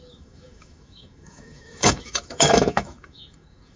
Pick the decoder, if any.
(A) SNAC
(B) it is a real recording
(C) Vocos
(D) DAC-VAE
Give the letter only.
D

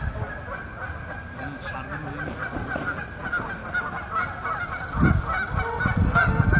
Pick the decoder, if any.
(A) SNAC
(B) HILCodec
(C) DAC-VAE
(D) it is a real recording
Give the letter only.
D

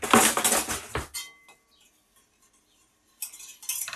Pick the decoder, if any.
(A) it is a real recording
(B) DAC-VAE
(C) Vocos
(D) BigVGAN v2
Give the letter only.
A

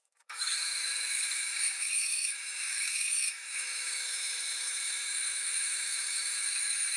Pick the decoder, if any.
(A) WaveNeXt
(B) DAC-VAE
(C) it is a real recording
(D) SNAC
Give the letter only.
B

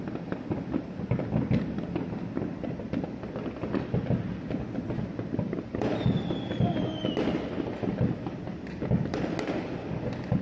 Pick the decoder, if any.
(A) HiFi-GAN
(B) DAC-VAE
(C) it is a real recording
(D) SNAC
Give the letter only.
C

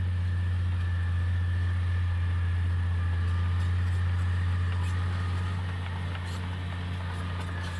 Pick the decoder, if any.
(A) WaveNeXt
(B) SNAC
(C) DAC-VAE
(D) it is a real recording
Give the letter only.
D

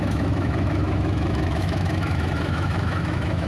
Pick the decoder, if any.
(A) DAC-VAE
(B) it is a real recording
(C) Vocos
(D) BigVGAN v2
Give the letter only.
A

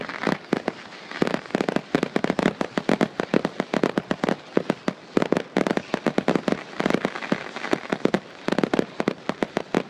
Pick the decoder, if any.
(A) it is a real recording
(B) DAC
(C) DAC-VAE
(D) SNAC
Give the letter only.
A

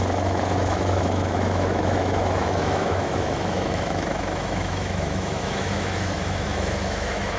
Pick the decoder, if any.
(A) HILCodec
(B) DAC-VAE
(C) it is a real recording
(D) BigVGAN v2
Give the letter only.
B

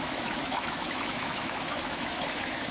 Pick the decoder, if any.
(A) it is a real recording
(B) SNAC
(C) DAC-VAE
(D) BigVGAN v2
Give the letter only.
C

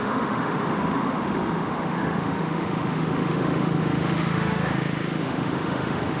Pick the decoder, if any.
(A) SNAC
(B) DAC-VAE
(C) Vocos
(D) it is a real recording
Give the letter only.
B